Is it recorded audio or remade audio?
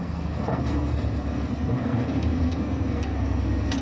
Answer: remade